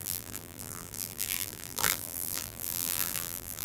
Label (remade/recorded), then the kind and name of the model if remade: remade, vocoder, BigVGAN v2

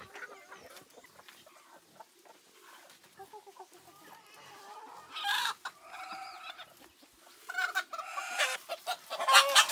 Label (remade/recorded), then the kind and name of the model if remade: recorded